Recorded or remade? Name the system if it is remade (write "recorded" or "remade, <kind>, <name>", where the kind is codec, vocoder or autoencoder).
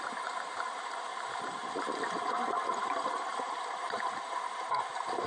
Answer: remade, vocoder, BigVGAN v2